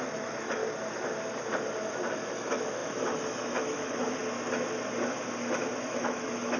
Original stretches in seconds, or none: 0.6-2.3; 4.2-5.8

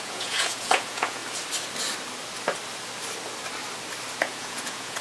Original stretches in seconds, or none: 1.2-4.2

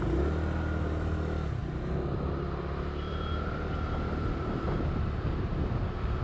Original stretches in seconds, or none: 0.0-6.2

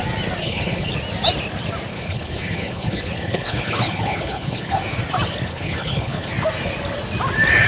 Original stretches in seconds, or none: 0.0-0.4; 0.9-1.9; 4.8-5.5; 6.3-7.7

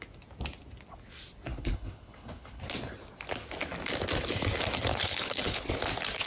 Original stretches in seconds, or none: 0.0-1.5; 2.6-4.9; 5.7-6.3

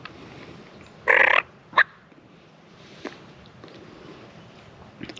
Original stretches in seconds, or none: 0.0-5.2

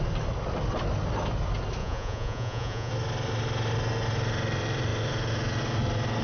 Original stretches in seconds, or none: 0.0-1.8; 2.9-6.2